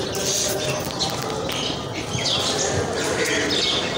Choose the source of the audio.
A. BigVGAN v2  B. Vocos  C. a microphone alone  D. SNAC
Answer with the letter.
C